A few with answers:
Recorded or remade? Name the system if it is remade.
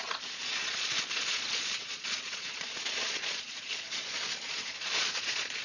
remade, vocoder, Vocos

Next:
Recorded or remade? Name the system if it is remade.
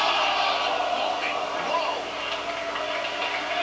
recorded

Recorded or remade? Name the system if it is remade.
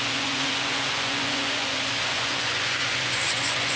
remade, vocoder, Vocos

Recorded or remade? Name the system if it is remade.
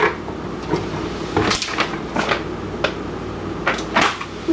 recorded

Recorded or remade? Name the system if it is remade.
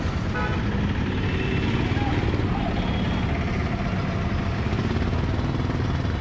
recorded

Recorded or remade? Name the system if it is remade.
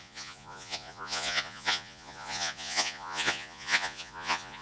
remade, vocoder, Vocos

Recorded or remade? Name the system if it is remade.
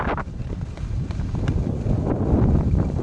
recorded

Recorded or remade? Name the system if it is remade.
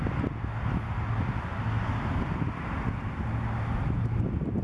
recorded